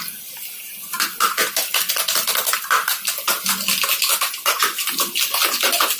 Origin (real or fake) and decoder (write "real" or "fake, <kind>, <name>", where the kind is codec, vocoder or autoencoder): real